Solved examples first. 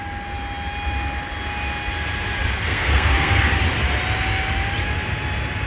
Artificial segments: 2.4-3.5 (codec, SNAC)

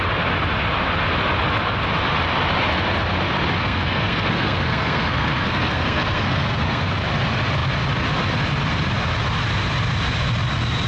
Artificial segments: 3.6-6.9 (codec, SNAC)

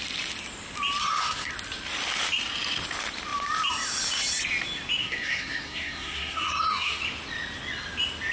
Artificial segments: 1.0-1.5 (codec, SNAC); 5.0-7.0

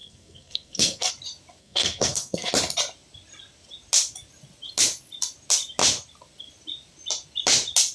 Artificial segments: 0.0-1.1 (codec, SNAC); 1.6-2.5

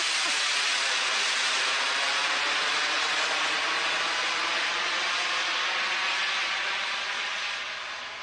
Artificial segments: none

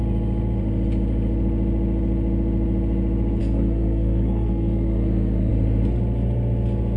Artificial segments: 3.4-5.5 (codec, SNAC)

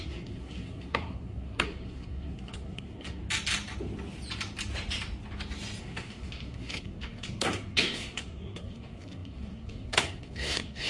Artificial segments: 0.0-3.2 (codec, SNAC); 5.8-10.9

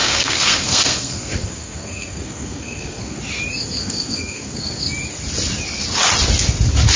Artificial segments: 0.0-3.2 (codec, SNAC); 3.8-4.8